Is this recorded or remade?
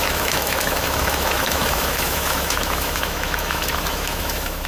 remade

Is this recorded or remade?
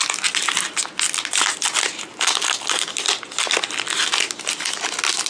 recorded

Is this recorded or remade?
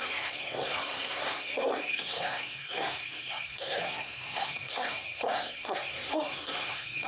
remade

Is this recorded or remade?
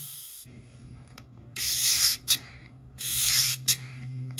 remade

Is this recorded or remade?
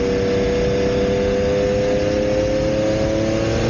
recorded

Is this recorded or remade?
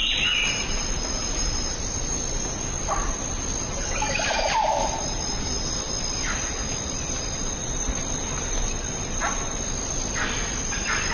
recorded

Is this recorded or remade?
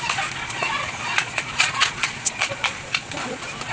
remade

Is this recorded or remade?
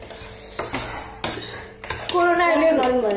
recorded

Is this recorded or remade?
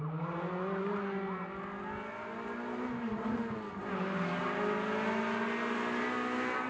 recorded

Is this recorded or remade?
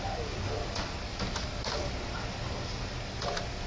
recorded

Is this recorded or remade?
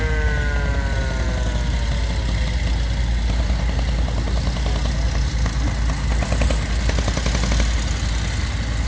recorded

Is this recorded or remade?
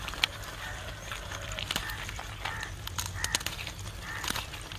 recorded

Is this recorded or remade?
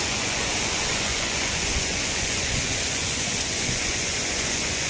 remade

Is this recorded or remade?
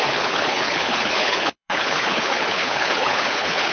remade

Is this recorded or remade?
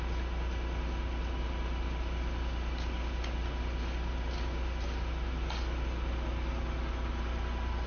recorded